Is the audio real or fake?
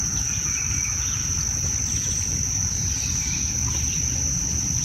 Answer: real